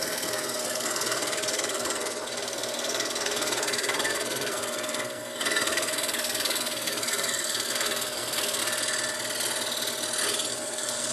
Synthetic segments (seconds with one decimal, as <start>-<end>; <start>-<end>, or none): 0.0-8.6; 10.5-11.1